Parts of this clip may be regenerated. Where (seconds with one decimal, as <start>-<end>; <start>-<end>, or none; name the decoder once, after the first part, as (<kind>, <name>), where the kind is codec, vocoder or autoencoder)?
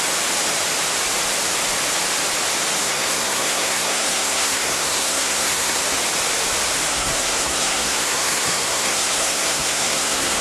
2.8-5.8 (codec, SNAC); 6.9-10.4